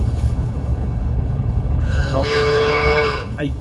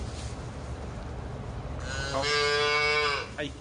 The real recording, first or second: second